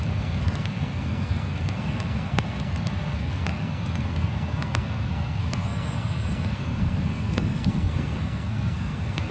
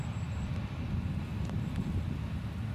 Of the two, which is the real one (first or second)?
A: second